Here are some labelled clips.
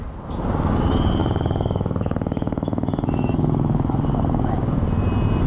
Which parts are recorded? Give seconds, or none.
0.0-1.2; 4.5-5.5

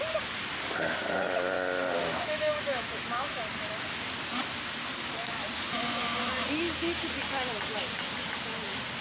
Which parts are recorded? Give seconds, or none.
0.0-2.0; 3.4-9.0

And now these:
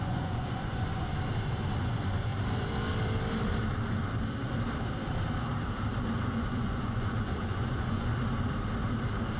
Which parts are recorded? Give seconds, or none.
1.1-1.8; 2.3-6.3; 8.1-9.4